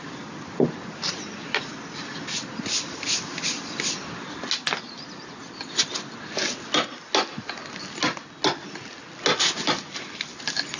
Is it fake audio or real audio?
real